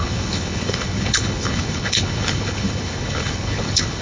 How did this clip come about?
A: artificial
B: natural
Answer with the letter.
A